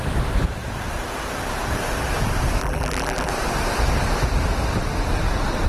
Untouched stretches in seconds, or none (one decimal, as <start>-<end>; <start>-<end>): 0.0-2.6; 3.3-5.7